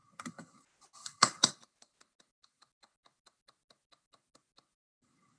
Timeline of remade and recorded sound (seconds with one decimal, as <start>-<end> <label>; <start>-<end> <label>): 0.0-5.4 recorded